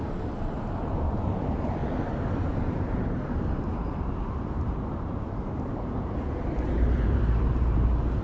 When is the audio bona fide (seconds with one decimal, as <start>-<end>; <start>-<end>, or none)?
1.8-2.5